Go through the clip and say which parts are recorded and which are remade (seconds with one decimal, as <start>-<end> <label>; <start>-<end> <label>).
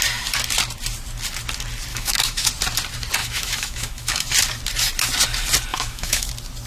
0.0-1.9 recorded; 1.9-2.5 remade; 2.5-3.2 recorded; 3.2-4.3 remade; 4.3-5.7 recorded; 5.7-6.3 remade; 6.3-6.7 recorded